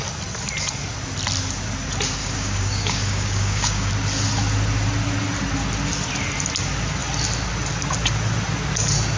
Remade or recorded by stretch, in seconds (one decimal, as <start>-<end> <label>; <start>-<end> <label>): 0.0-2.2 recorded; 2.2-3.9 remade; 3.9-9.2 recorded

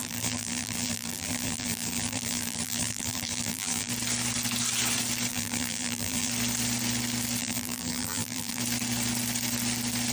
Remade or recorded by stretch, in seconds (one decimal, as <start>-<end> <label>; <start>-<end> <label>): 0.0-3.9 remade; 3.9-5.3 recorded; 5.3-6.3 remade; 6.3-7.4 recorded; 7.4-8.6 remade; 8.6-10.1 recorded

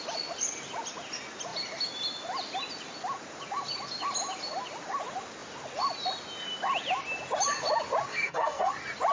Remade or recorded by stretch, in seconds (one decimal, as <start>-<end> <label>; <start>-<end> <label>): 0.0-8.1 recorded; 8.1-8.7 remade; 8.7-9.1 recorded

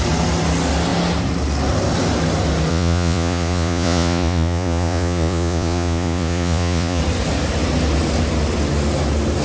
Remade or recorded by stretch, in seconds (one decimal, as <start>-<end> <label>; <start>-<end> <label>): 0.0-2.7 recorded; 2.7-7.0 remade; 7.0-9.4 recorded

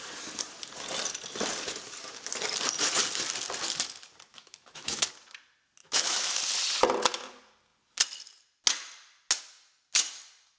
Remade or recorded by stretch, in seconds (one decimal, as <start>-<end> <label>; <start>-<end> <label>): 0.0-4.3 recorded; 4.3-5.1 remade; 5.1-5.8 recorded; 5.8-6.4 remade; 6.4-10.6 recorded

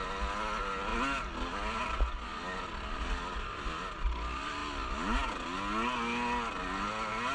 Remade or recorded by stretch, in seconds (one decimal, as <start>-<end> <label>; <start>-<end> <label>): 0.0-7.3 recorded

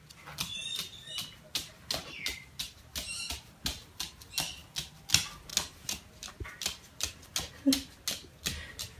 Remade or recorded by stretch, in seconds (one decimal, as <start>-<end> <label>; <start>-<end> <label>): 0.0-9.0 recorded